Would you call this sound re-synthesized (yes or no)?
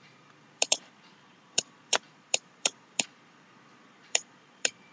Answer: yes